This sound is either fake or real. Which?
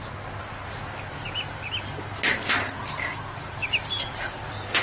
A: real